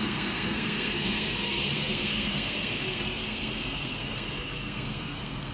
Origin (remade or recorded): remade